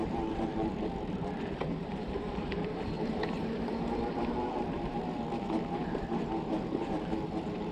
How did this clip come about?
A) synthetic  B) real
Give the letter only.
A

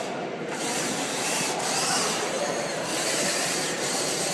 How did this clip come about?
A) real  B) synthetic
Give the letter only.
B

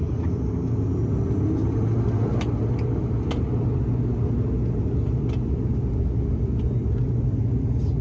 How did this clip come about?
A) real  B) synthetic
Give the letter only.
A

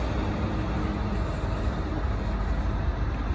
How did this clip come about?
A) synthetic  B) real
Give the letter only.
B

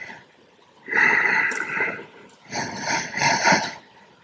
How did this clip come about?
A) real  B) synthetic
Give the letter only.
B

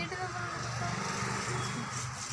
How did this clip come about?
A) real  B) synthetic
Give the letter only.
A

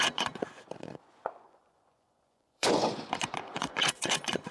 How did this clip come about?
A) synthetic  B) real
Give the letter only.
A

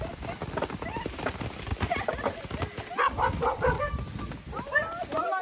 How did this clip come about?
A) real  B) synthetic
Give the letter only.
A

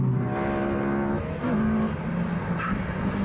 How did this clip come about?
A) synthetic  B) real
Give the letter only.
B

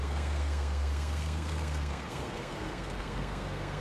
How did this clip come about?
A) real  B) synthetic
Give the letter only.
B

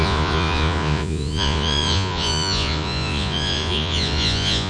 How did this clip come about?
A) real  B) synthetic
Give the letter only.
B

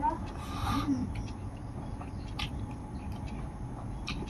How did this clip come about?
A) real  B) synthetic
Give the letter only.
B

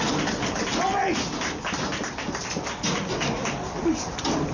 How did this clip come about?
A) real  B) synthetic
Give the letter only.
A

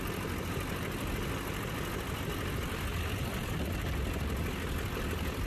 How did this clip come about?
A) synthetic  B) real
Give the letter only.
B